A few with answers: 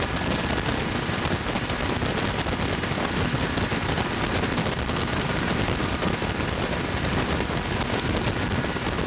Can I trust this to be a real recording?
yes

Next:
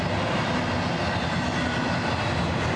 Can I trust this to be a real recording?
yes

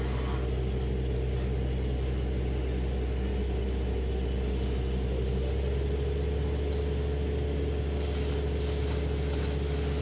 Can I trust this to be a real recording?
yes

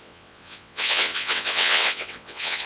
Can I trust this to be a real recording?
no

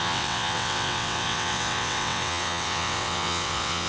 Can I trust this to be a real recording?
no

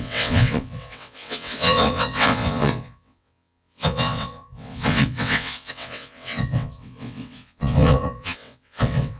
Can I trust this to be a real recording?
no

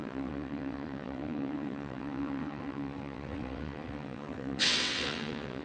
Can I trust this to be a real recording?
no